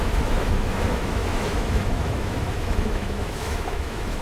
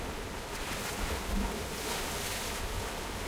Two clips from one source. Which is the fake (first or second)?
first